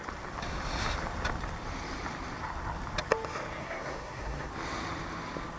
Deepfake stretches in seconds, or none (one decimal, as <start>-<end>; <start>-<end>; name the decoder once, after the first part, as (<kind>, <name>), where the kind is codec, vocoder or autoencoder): 3.6-4.5 (codec, SNAC)

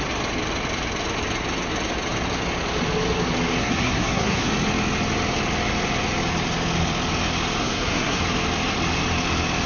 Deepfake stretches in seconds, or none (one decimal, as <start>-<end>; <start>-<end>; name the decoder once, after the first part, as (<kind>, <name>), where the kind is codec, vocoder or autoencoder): 3.6-4.5 (codec, SNAC); 7.6-8.2

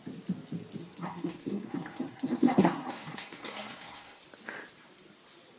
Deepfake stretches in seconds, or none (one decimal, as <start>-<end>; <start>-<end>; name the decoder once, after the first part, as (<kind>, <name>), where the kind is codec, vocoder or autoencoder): 0.8-4.2 (codec, SNAC)